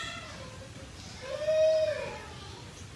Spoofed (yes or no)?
no